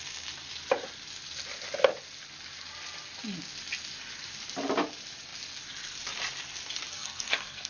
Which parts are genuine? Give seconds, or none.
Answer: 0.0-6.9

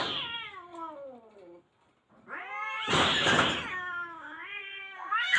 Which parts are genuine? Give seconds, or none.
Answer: 0.0-4.5

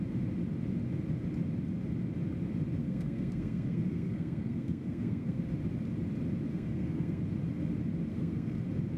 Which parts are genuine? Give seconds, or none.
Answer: 0.0-2.8; 5.4-6.5; 7.2-8.1; 8.6-9.0

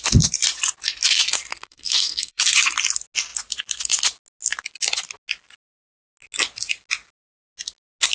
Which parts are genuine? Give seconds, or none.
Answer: 0.0-1.6; 2.4-8.1

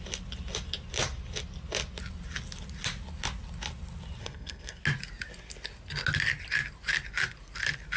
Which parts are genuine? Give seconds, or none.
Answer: 0.0-4.2; 4.8-8.0